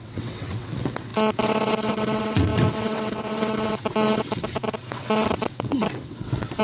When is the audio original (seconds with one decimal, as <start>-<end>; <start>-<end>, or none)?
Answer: none